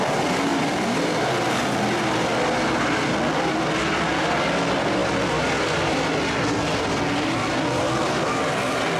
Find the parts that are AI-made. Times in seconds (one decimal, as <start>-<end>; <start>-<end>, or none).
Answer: none